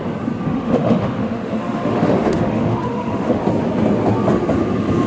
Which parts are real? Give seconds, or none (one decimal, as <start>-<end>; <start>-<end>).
0.0-0.5; 3.4-5.1